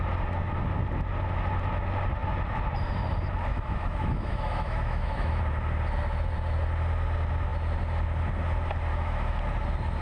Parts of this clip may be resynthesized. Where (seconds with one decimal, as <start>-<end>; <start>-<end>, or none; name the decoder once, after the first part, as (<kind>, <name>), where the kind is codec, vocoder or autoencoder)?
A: 3.5-5.4 (autoencoder, DAC-VAE); 8.9-9.4